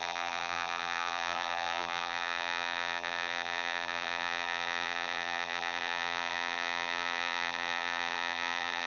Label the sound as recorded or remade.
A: remade